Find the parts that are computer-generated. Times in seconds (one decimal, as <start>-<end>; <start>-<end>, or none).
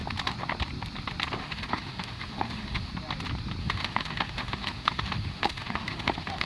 1.4-2.9; 3.6-6.5